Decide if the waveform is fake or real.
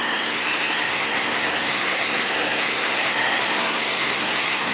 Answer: fake